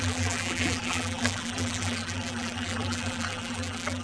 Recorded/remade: remade